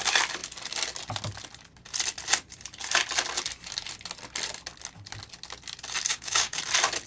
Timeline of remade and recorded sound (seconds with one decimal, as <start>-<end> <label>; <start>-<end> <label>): 0.0-6.1 recorded; 6.1-6.6 remade; 6.6-7.1 recorded